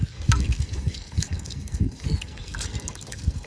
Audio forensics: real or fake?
fake